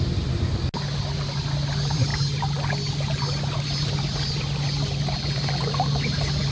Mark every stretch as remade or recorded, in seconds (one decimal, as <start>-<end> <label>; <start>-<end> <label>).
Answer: 0.0-6.5 recorded